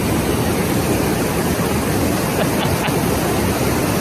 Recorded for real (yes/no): yes